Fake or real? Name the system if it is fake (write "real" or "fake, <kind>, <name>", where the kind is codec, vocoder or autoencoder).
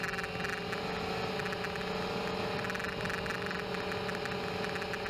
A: real